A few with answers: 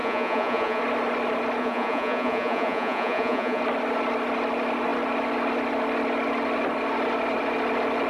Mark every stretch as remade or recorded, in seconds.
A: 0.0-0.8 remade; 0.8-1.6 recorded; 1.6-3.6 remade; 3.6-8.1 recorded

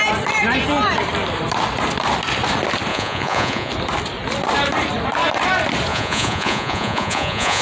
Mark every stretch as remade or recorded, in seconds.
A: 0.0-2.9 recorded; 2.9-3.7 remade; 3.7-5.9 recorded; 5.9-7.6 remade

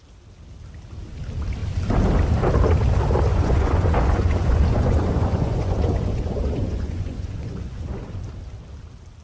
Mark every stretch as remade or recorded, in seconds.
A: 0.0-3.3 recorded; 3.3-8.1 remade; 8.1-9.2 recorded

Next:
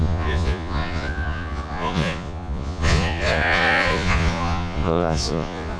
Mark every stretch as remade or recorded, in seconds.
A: 0.0-5.8 remade

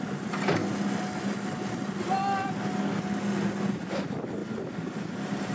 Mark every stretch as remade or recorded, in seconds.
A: 0.0-5.5 recorded

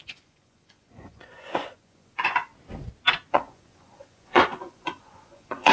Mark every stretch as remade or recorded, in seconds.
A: 0.0-2.5 remade; 2.5-3.3 recorded; 3.3-5.7 remade

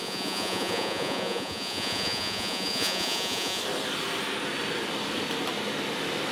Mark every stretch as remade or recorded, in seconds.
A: 0.0-3.6 remade; 3.6-6.3 recorded